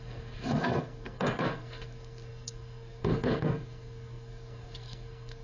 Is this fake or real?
fake